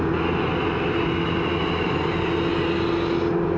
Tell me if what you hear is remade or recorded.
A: recorded